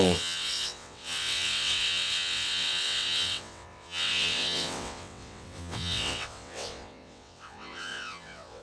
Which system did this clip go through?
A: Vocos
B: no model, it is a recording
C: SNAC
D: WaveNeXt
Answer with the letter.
D